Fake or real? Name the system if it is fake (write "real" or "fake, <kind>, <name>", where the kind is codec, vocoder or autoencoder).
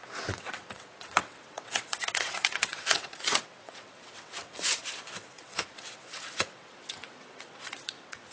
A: fake, vocoder, WaveNeXt